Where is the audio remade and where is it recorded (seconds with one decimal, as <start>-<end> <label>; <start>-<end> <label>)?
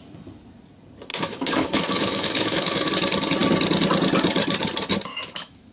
0.0-1.1 recorded; 1.1-2.9 remade; 2.9-5.1 recorded; 5.1-5.7 remade